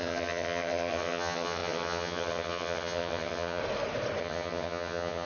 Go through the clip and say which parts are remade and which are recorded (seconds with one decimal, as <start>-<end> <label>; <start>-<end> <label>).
0.0-3.6 remade; 3.6-4.2 recorded; 4.2-5.3 remade